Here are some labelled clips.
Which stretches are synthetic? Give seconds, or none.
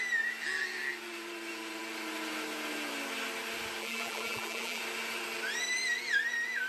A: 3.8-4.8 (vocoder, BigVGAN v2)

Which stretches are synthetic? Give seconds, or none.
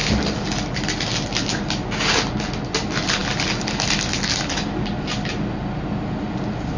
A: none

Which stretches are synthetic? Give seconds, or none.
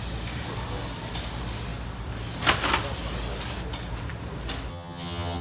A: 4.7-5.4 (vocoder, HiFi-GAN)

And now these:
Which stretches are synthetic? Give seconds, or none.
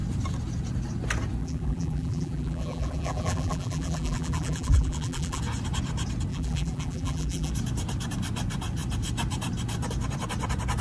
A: 1.4-5.4 (vocoder, BigVGAN v2); 6.3-7.5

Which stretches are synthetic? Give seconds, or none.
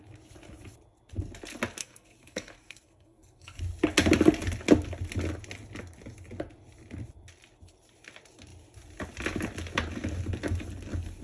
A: 1.8-3.6 (codec, SNAC)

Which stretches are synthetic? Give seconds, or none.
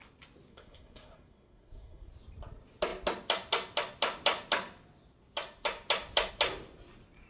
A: 0.5-2.1 (codec, SNAC)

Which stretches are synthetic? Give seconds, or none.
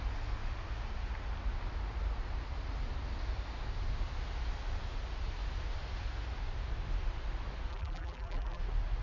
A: 7.7-8.6 (vocoder, BigVGAN v2)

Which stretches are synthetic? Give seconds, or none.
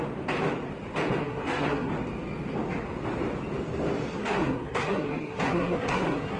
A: 1.2-1.9 (codec, SNAC); 4.1-6.4